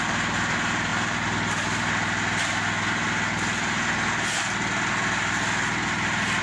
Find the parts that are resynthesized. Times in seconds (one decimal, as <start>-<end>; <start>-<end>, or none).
none